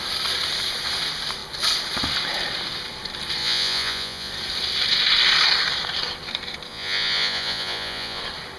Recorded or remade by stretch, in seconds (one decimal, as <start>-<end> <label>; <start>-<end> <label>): 0.0-3.4 recorded; 3.4-4.3 remade; 4.3-6.7 recorded; 6.7-8.2 remade; 8.2-8.6 recorded

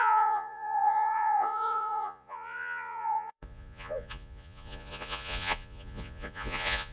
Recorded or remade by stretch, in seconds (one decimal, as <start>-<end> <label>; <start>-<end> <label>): 0.0-6.9 remade

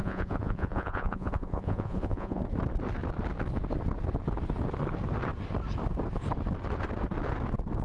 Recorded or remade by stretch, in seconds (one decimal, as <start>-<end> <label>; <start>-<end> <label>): 0.0-2.4 remade; 2.4-7.8 recorded